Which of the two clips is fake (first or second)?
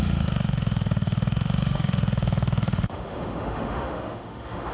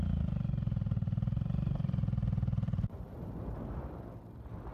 first